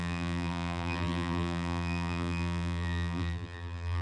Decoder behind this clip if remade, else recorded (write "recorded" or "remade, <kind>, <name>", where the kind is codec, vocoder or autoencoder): remade, vocoder, BigVGAN v2